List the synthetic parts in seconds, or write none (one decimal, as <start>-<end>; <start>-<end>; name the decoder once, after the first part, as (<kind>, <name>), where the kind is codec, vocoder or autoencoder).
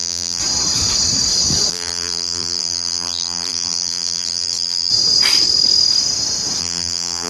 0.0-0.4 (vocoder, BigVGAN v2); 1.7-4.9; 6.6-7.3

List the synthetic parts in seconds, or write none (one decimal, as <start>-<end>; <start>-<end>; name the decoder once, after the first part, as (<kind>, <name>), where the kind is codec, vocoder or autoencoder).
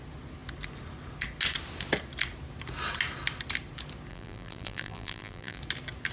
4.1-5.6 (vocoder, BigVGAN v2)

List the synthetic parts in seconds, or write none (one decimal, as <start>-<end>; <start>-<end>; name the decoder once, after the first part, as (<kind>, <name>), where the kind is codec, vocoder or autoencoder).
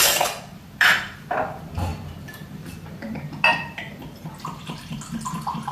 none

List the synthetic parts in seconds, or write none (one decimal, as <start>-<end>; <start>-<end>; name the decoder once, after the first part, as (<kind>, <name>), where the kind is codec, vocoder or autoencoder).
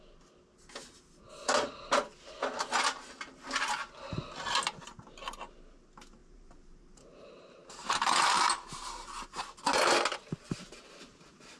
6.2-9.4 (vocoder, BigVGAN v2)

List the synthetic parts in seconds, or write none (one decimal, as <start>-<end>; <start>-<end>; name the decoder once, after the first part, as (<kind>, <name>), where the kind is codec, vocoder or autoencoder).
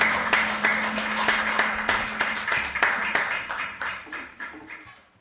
0.0-0.7 (vocoder, BigVGAN v2); 2.8-5.2